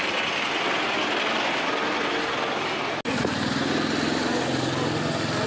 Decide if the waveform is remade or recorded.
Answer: recorded